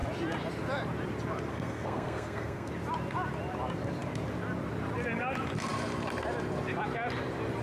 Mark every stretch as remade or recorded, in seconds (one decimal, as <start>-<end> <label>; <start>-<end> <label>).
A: 0.0-1.5 recorded; 1.5-2.7 remade; 2.7-7.6 recorded